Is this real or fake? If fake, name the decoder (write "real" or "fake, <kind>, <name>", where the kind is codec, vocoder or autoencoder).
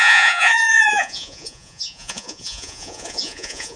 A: fake, vocoder, Vocos